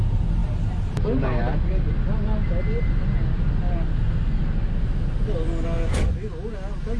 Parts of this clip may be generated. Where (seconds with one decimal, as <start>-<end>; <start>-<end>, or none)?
3.9-4.4